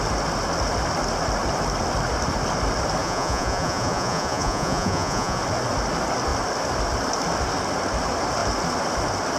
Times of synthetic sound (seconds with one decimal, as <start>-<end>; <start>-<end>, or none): 3.0-5.4